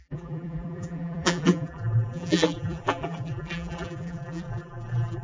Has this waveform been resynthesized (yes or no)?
yes